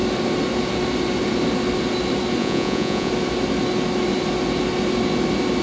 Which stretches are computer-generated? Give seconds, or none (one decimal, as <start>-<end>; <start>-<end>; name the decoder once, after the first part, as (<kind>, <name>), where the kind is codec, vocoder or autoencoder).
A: 2.4-3.1 (vocoder, Vocos)